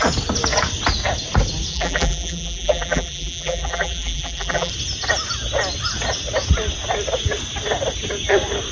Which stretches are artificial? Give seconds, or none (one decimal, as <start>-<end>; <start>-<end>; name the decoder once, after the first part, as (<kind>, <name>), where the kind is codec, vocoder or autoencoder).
1.7-4.7 (vocoder, BigVGAN v2)